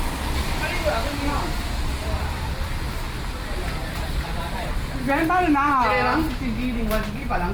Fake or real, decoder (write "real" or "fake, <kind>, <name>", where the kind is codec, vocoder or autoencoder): real